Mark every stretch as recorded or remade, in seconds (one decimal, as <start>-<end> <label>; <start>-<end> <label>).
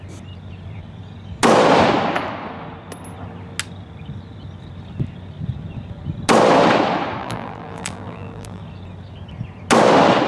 0.0-7.2 recorded; 7.2-8.6 remade; 8.6-10.3 recorded